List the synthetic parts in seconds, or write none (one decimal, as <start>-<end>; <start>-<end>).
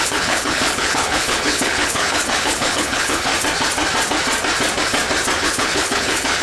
0.0-3.3; 5.4-6.4